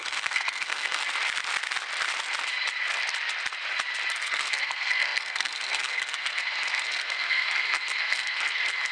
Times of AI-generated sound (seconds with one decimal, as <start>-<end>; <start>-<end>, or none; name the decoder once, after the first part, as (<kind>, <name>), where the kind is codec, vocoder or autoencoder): 0.0-1.0 (codec, SNAC); 4.1-8.9